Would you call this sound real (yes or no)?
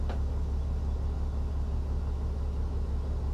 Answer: yes